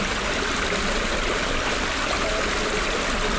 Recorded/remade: recorded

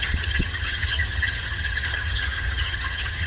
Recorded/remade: remade